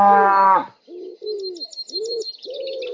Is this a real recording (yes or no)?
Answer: yes